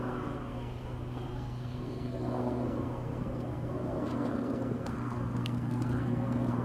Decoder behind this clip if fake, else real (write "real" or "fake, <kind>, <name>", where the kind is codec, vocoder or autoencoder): fake, codec, SNAC